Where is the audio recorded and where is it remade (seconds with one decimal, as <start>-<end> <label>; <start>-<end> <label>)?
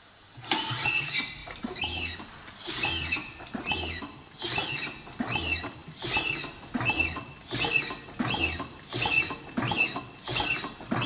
0.0-1.4 recorded; 1.4-2.5 remade; 2.5-11.1 recorded